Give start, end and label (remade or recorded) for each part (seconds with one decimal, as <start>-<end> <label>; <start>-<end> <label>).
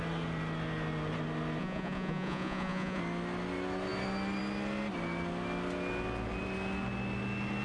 0.0-1.6 recorded; 1.6-3.0 remade; 3.0-7.6 recorded